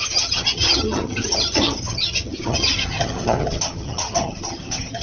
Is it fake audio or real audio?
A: fake